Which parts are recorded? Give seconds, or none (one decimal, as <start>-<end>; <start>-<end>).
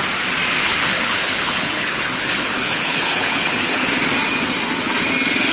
0.0-0.6; 3.9-5.5